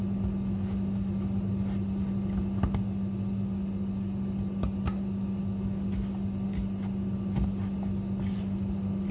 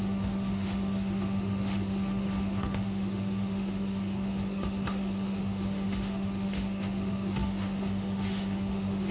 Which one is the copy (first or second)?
second